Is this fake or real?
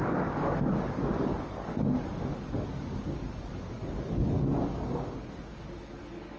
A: fake